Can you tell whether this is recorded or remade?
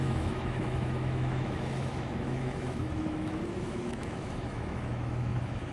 remade